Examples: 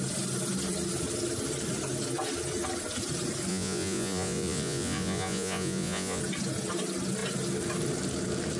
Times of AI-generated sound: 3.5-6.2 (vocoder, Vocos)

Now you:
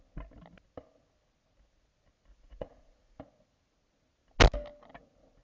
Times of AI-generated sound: 2.3-3.2 (vocoder, Vocos)

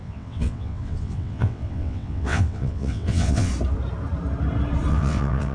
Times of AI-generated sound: 0.0-3.5 (vocoder, WaveNeXt); 4.9-5.5

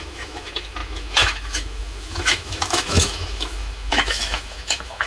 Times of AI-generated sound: 0.0-5.1 (autoencoder, DAC-VAE)

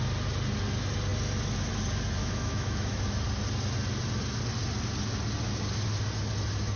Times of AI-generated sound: 2.2-3.0 (autoencoder, DAC-VAE)

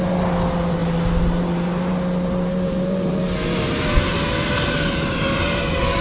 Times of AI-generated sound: none

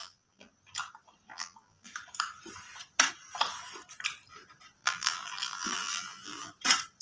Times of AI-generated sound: 0.0-0.5 (vocoder, BigVGAN v2); 1.3-1.9; 4.8-6.5